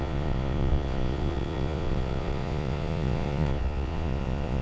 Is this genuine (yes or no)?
no